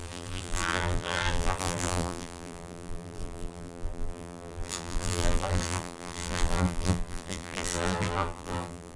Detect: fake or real fake